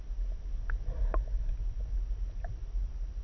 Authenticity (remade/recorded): recorded